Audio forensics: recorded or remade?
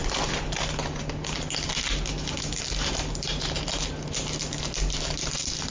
recorded